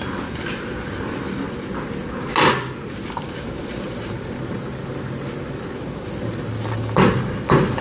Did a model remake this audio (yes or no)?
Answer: no